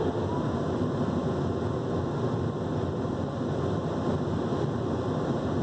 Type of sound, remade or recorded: recorded